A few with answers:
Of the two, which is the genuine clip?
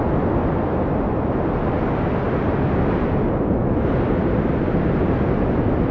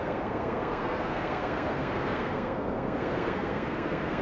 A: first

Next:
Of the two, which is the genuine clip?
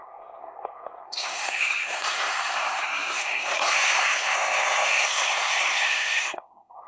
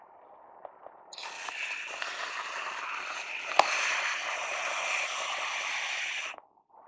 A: second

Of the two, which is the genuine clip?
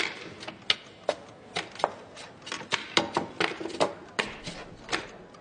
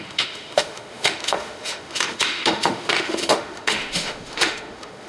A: first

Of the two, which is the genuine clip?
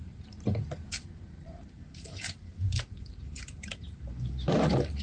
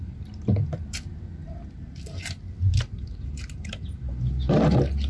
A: second